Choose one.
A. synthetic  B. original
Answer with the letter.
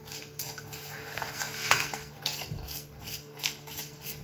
A